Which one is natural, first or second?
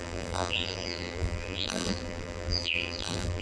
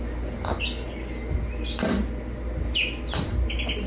second